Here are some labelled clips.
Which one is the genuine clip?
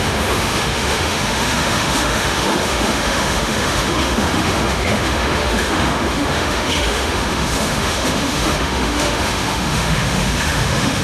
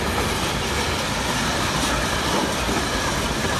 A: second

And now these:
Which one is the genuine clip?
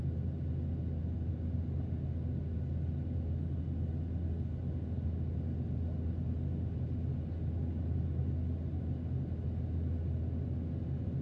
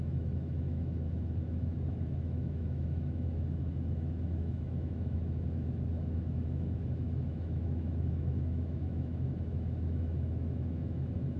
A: first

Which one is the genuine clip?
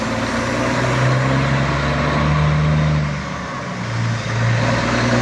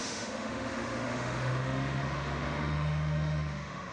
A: first